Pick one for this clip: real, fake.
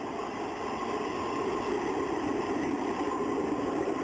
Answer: real